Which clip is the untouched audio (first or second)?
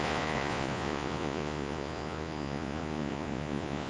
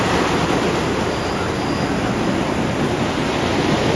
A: second